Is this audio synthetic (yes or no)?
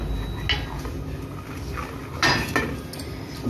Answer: no